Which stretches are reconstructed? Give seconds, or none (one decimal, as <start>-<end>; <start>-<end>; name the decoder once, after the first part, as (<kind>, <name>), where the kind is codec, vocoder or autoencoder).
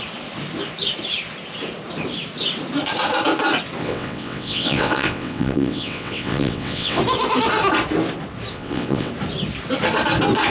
3.8-7.0 (vocoder, WaveNeXt); 8.5-9.1